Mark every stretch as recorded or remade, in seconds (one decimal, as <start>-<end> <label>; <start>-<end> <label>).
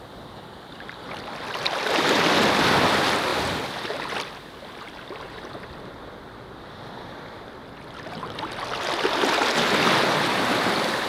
0.0-11.1 recorded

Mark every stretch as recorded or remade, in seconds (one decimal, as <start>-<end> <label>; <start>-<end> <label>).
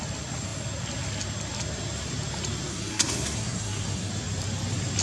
0.0-2.7 recorded; 2.7-4.1 remade; 4.1-5.0 recorded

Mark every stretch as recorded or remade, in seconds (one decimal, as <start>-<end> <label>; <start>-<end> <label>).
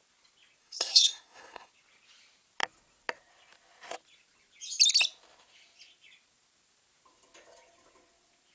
0.0-0.6 recorded; 0.6-1.7 remade; 1.7-8.5 recorded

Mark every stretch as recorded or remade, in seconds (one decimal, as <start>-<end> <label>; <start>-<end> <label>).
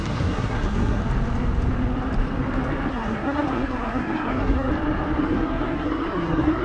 0.0-1.0 remade; 1.0-2.9 recorded; 2.9-4.7 remade; 4.7-5.2 recorded; 5.2-6.6 remade